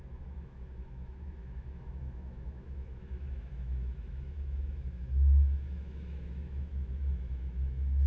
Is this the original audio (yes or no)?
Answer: no